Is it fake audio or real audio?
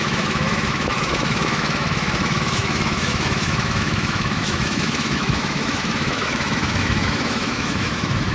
fake